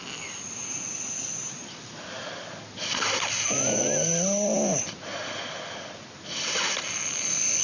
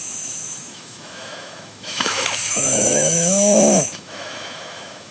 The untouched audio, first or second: first